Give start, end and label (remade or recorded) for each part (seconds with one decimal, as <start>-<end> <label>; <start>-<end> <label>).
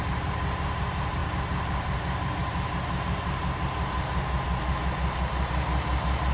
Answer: 0.0-6.3 recorded